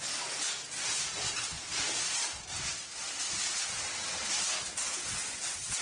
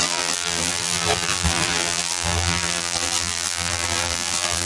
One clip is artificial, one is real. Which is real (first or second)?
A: first